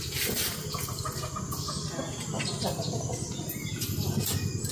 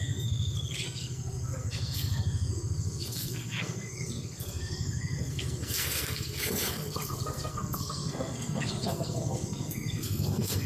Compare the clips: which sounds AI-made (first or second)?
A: second